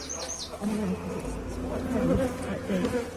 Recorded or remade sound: recorded